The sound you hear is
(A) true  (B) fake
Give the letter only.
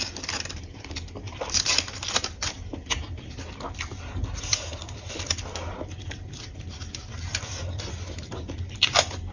A